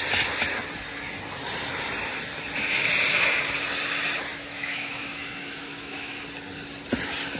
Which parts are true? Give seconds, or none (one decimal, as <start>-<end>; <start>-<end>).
0.0-4.3; 6.2-7.4